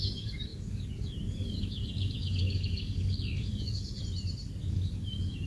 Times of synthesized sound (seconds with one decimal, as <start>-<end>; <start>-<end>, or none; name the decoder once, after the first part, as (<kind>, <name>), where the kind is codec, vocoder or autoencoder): 0.0-4.0 (codec, DAC); 4.6-5.5